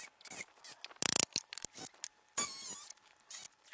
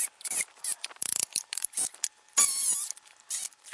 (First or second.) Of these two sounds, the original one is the first